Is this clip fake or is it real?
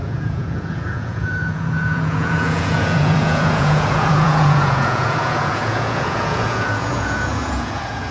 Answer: fake